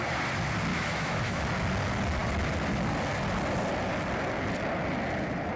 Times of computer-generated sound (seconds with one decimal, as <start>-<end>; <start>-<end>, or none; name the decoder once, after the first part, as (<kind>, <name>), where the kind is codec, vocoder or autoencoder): 0.7-1.4 (autoencoder, DAC-VAE)